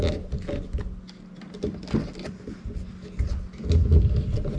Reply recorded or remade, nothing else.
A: recorded